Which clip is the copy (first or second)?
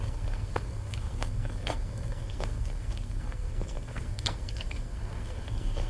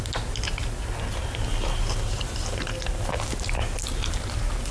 first